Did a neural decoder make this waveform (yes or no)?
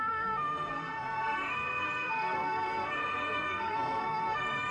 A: yes